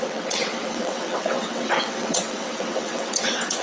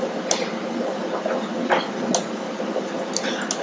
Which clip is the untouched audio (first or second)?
second